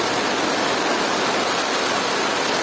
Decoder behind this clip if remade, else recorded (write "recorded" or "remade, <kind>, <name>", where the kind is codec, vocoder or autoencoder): recorded